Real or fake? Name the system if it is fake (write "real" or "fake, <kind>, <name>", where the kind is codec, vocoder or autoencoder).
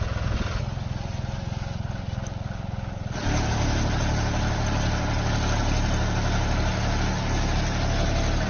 real